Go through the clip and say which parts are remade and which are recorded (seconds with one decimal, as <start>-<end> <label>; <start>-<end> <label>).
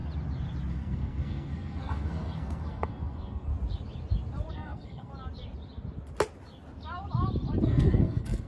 0.0-0.7 recorded; 0.7-3.5 remade; 3.5-4.5 recorded; 4.5-5.1 remade; 5.1-7.6 recorded; 7.6-8.5 remade